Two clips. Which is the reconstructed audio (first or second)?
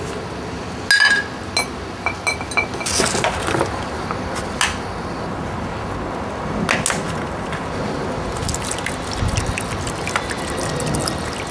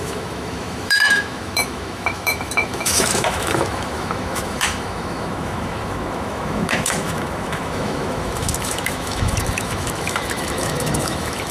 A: second